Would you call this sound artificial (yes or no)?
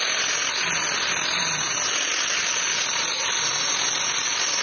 no